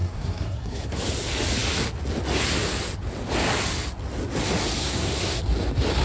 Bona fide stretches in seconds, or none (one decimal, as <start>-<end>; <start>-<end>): 1.0-4.8; 5.4-6.0